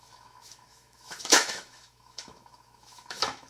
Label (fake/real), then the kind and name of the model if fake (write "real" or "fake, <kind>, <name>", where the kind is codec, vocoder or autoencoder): fake, autoencoder, DAC-VAE